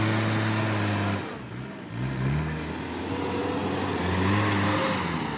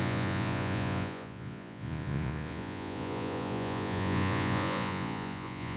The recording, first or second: first